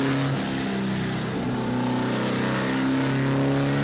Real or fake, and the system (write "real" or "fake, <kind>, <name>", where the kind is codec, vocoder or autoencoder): real